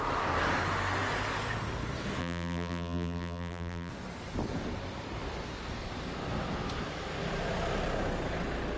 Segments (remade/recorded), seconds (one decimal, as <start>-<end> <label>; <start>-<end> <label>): 0.0-2.2 recorded; 2.2-3.9 remade; 3.9-8.8 recorded